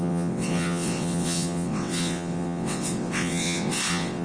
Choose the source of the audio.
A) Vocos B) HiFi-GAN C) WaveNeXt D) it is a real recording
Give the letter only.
C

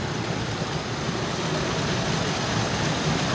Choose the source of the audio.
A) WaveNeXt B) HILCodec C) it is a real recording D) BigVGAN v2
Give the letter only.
C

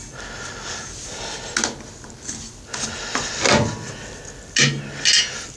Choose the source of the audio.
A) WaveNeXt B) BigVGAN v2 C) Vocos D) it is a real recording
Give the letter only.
D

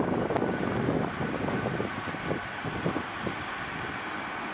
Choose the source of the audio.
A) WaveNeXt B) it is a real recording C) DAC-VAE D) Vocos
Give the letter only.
B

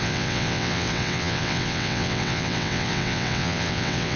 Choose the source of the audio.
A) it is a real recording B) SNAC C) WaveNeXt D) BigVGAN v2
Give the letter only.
C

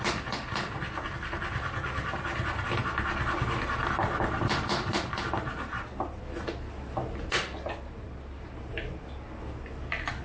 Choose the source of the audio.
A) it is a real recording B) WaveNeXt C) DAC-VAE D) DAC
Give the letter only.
A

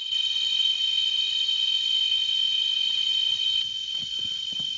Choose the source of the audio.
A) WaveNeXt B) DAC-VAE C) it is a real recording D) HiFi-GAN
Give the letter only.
A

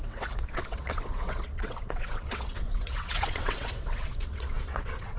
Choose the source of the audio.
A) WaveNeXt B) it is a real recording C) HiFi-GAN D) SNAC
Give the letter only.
A